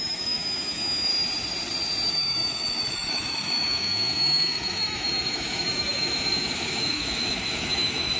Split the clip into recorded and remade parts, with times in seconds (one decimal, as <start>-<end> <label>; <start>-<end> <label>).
0.0-1.1 remade; 1.1-2.1 recorded; 2.1-8.2 remade